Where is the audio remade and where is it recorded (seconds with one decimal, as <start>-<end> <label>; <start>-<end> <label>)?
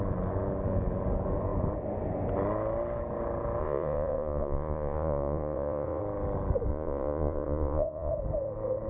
0.0-3.6 recorded; 3.6-6.0 remade; 6.0-6.7 recorded; 6.7-8.1 remade; 8.1-8.9 recorded